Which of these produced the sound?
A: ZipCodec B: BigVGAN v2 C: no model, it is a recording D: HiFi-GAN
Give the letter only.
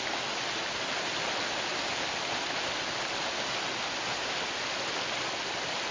C